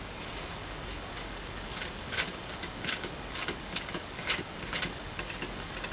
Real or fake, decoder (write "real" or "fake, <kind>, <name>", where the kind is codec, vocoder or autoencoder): fake, codec, DAC